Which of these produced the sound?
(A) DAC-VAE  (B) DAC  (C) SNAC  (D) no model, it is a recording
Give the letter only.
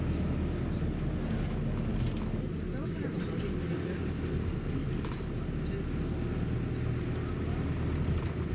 D